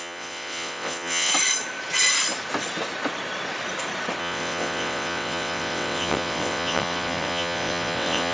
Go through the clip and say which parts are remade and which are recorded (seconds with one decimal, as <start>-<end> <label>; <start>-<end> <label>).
0.0-1.3 remade; 1.3-4.2 recorded; 4.2-8.3 remade